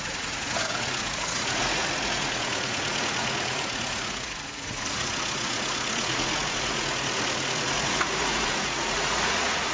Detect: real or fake fake